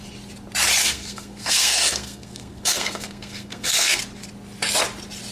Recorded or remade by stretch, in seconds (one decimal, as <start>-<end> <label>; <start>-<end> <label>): 0.0-0.8 recorded; 0.8-4.0 remade; 4.0-5.3 recorded